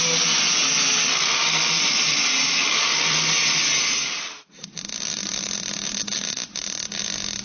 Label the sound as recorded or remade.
recorded